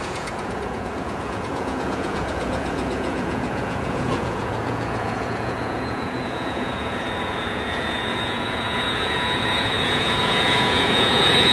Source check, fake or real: fake